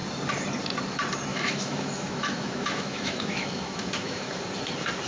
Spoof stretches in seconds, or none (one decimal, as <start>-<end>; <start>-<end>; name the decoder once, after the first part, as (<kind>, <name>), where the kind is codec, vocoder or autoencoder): 1.3-4.4 (autoencoder, DAC-VAE)